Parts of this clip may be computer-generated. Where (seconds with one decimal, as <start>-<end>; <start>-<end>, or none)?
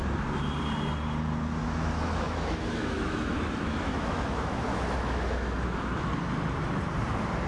1.6-6.1